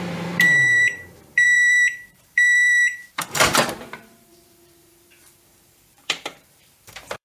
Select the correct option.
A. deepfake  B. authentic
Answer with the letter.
A